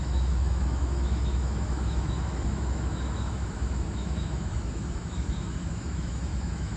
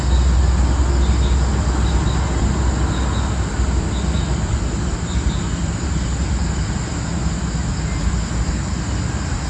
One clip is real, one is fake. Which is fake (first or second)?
first